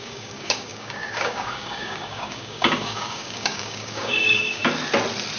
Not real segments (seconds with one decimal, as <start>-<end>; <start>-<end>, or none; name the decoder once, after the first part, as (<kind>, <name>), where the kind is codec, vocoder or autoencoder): 0.0-4.6 (codec, DAC)